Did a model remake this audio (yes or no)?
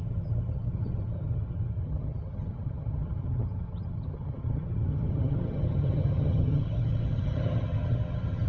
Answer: yes